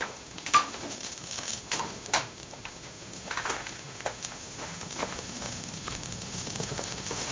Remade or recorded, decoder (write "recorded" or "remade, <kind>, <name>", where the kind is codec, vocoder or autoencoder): remade, autoencoder, DAC-VAE